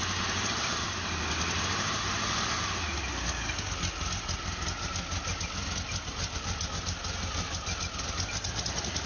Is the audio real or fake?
real